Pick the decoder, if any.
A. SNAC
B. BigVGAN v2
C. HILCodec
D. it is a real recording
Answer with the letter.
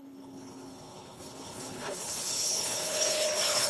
C